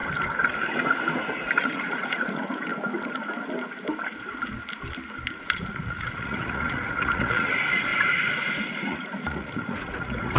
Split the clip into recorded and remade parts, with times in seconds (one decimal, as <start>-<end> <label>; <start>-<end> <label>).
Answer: 0.0-1.6 recorded; 1.6-2.7 remade; 2.7-5.4 recorded; 5.4-10.4 remade